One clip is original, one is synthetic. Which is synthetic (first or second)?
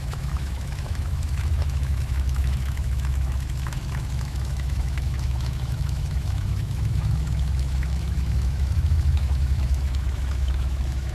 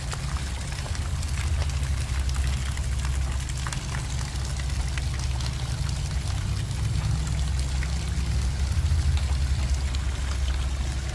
first